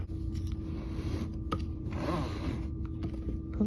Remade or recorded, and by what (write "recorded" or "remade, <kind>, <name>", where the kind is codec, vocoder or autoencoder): recorded